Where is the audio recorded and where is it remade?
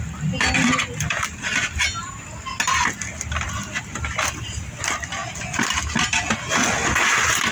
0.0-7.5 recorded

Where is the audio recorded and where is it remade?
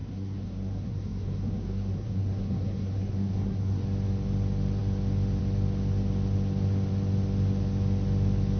0.0-3.8 remade; 3.8-8.6 recorded